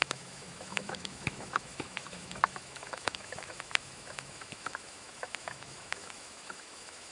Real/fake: fake